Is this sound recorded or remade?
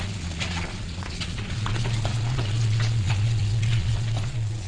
remade